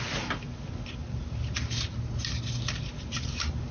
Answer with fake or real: real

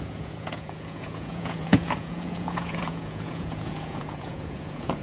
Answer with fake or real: fake